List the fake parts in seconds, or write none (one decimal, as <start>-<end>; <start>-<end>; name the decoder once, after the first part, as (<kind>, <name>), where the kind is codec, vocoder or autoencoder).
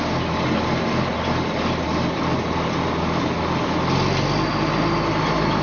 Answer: none